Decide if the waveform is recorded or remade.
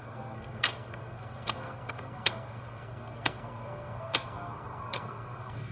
remade